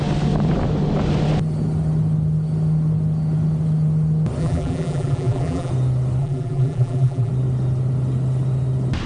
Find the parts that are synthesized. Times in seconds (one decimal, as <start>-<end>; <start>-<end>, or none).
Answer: 4.4-5.7; 6.2-7.3